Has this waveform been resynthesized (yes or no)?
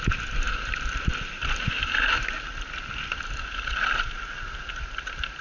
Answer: yes